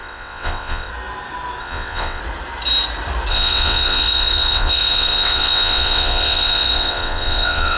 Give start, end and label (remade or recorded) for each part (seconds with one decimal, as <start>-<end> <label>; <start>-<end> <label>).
0.0-0.9 remade; 0.9-1.6 recorded; 1.6-2.2 remade; 2.2-3.3 recorded; 3.3-7.8 remade